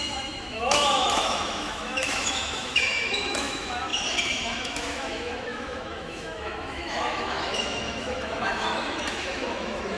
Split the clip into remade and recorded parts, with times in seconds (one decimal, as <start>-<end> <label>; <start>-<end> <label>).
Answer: 0.0-10.0 remade